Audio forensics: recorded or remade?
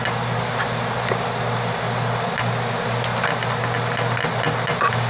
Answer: recorded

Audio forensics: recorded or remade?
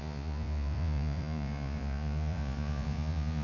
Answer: remade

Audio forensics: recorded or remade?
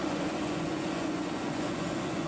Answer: remade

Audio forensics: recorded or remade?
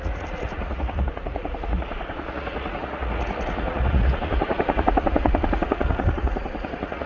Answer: remade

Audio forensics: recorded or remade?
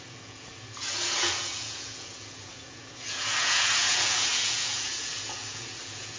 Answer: remade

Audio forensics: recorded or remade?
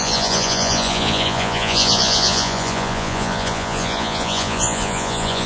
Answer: remade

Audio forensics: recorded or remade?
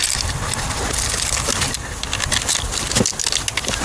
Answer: recorded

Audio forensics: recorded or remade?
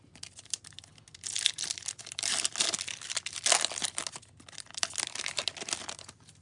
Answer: recorded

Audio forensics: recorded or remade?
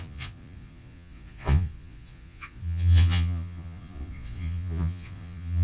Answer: remade